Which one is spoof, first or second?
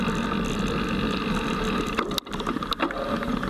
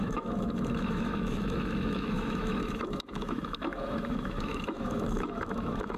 second